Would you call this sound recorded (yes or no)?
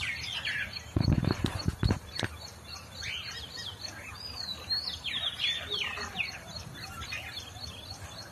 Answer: yes